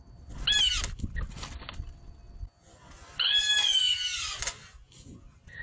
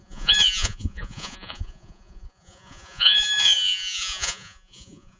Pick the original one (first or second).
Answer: first